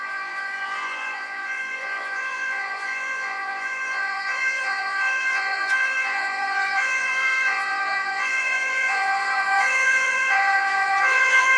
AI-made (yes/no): yes